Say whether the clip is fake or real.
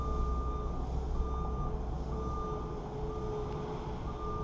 real